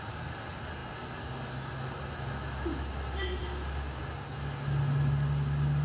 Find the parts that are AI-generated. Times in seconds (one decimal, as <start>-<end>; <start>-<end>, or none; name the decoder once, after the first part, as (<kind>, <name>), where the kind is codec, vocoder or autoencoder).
none